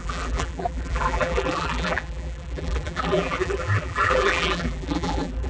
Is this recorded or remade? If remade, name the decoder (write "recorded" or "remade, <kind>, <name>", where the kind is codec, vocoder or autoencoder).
remade, vocoder, BigVGAN v2